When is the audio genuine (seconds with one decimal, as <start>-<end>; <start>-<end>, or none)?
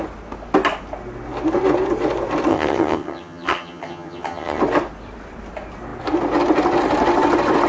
0.0-2.5; 4.6-7.7